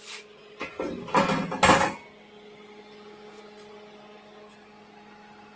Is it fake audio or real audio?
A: real